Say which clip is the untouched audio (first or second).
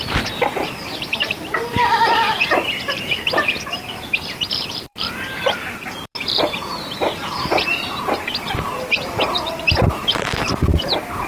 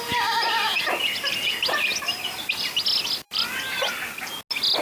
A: second